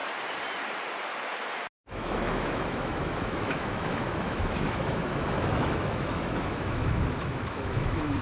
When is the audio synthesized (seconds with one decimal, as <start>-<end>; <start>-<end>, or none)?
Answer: 1.8-8.2